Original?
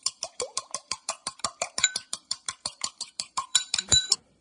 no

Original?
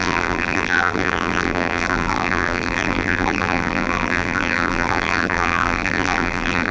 no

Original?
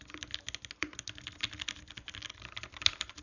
yes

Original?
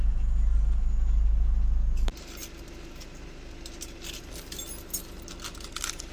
yes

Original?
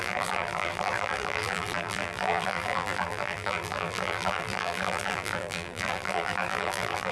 no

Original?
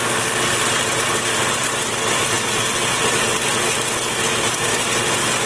yes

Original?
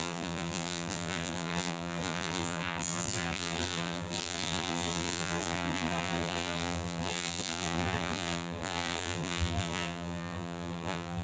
no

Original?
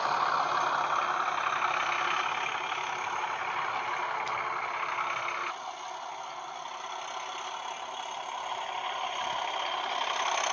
yes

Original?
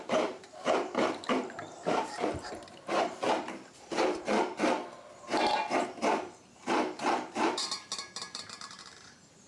no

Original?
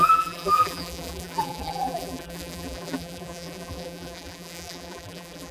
no